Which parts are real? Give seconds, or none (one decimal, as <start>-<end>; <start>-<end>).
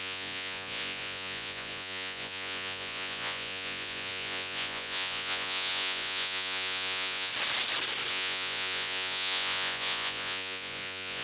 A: 7.3-8.1